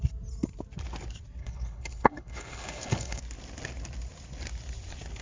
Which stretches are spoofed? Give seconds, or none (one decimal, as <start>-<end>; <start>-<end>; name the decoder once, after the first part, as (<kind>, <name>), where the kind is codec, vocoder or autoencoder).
1.4-3.2 (codec, HILCodec)